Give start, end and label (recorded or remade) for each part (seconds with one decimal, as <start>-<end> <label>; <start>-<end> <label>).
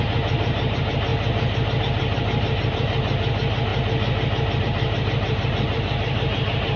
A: 0.0-1.1 remade; 1.1-1.8 recorded; 1.8-3.7 remade; 3.7-4.6 recorded; 4.6-6.8 remade